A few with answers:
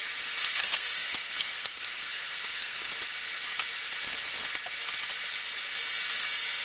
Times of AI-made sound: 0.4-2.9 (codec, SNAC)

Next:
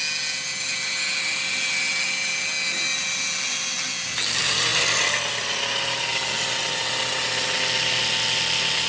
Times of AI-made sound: none

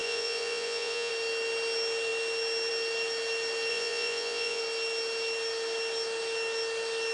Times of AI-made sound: 0.0-1.1 (vocoder, Vocos); 3.7-4.6

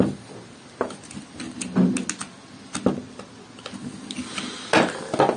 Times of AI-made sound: none

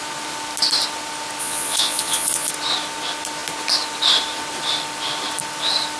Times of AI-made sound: 1.4-2.5 (vocoder, Vocos)

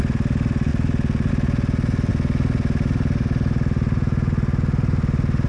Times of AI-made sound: none